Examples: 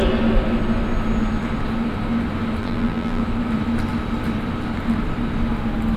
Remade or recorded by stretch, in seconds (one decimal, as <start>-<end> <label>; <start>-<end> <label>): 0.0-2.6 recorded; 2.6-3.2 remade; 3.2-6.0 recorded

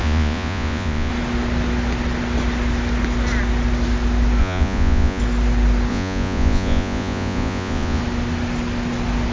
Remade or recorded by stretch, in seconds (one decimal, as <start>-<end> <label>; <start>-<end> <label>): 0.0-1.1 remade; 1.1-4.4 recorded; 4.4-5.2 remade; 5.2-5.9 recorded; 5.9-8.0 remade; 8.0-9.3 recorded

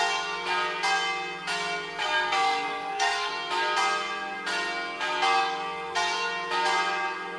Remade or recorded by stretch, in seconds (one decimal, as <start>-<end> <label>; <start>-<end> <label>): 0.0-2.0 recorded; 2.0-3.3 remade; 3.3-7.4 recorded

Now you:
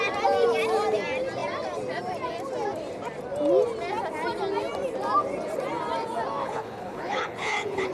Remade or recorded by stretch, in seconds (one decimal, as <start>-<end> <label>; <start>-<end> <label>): 0.0-6.4 recorded; 6.4-7.9 remade